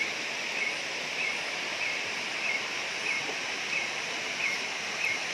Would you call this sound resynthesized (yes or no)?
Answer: no